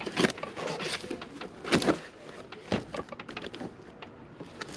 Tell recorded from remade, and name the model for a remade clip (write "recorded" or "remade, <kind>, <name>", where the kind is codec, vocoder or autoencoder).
recorded